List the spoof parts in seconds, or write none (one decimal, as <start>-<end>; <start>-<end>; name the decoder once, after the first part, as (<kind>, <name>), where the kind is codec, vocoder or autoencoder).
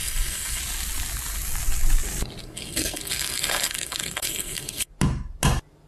0.0-0.6 (codec, SNAC); 2.4-4.9